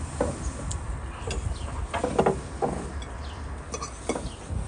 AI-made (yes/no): no